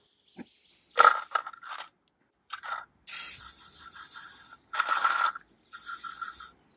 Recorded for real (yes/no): yes